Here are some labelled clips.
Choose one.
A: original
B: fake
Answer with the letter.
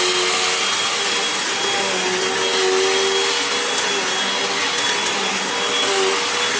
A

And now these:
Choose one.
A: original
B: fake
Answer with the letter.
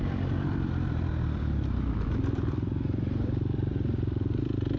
B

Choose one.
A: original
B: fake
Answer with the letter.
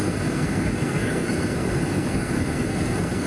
B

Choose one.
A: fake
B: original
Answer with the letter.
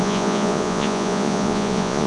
A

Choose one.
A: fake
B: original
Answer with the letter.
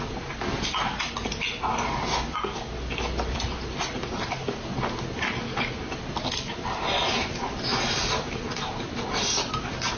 B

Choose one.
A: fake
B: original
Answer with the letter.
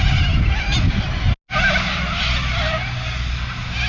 B